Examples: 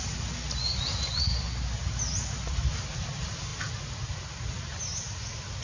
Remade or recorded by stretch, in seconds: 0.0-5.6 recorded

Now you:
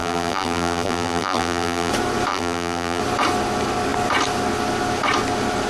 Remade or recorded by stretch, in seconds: 0.0-1.9 remade; 1.9-2.3 recorded; 2.3-3.0 remade; 3.0-5.7 recorded